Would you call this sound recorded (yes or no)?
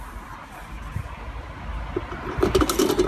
yes